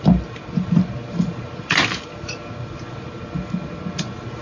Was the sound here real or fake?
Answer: real